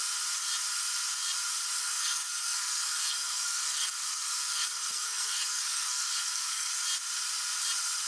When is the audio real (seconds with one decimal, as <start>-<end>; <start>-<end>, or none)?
0.0-1.8; 6.7-8.1